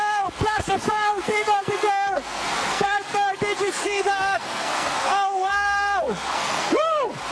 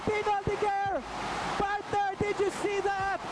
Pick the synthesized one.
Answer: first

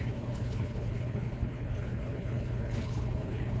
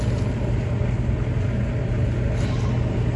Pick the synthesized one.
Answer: first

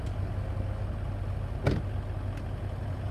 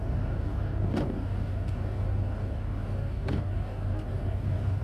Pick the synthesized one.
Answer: second